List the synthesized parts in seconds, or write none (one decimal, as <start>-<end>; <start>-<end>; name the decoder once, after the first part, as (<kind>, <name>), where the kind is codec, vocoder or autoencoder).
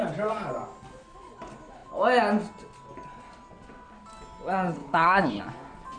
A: 4.8-5.4 (codec, HILCodec)